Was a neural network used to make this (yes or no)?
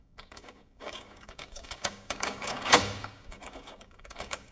yes